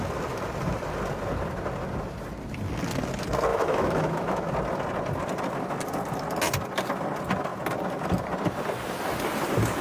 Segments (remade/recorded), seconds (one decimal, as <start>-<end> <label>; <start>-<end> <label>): 0.0-3.5 recorded; 3.5-4.5 remade; 4.5-9.8 recorded